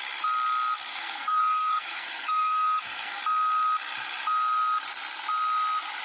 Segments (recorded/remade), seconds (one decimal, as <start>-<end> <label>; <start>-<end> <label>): 0.0-0.9 recorded; 0.9-3.2 remade; 3.2-6.0 recorded